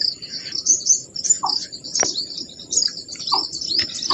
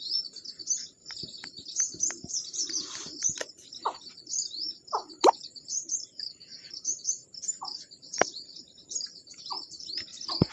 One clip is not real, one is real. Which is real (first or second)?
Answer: first